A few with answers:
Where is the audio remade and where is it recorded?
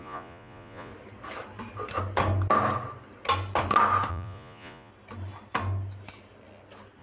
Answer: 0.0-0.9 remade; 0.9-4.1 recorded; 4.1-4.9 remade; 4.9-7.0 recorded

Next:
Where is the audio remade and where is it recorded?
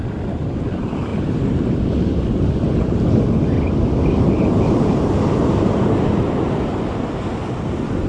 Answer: 0.0-8.1 recorded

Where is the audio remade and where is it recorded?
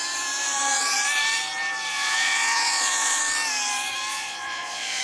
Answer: 0.0-1.9 recorded; 1.9-3.2 remade; 3.2-4.1 recorded; 4.1-5.0 remade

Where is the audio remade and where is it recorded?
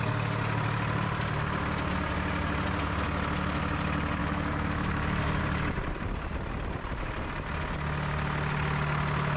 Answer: 0.0-4.2 recorded; 4.2-5.4 remade; 5.4-9.4 recorded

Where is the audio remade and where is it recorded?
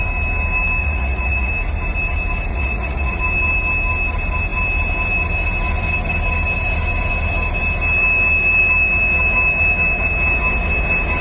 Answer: 0.0-0.8 recorded; 0.8-1.5 remade; 1.5-2.5 recorded; 2.5-3.2 remade; 3.2-11.2 recorded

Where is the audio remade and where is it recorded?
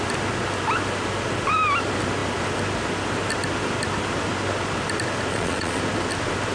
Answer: 0.0-5.3 recorded; 5.3-5.8 remade; 5.8-6.5 recorded